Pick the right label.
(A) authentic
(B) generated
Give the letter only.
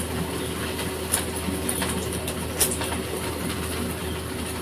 A